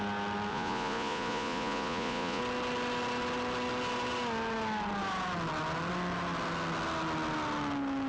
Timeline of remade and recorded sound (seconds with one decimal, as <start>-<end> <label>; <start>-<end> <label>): 0.0-0.5 recorded; 0.5-2.4 remade; 2.4-8.1 recorded